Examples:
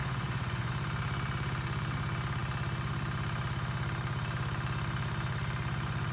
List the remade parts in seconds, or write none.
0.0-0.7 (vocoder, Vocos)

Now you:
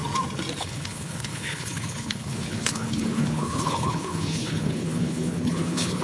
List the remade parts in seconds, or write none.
0.6-6.0 (codec, HILCodec)

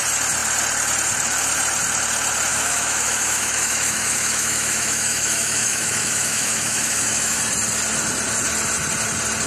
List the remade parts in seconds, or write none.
2.5-7.4 (autoencoder, DAC-VAE)

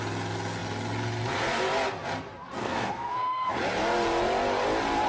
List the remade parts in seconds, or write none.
2.6-3.5 (codec, SNAC)